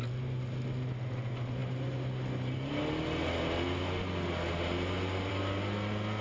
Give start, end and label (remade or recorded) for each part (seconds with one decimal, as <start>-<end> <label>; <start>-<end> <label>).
0.0-6.2 recorded